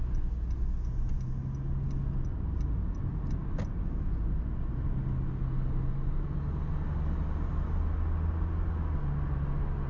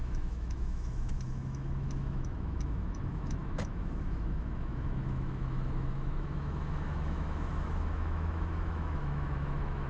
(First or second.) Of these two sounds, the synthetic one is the second